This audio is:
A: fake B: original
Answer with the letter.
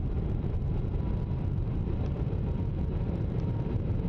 A